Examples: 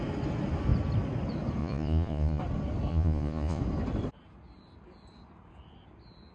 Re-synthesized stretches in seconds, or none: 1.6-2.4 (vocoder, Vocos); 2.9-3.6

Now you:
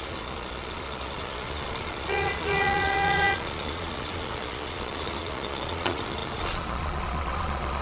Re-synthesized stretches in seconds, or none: 0.0-7.8 (vocoder, Vocos)